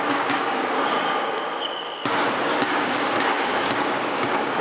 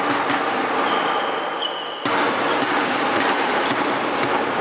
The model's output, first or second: first